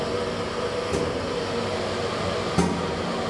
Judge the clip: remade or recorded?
recorded